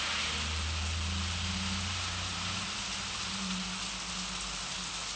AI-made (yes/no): no